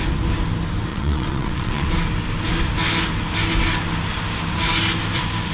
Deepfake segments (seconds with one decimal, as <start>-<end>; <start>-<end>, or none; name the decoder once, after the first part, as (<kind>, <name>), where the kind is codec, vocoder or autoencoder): 0.9-1.9 (vocoder, WaveNeXt)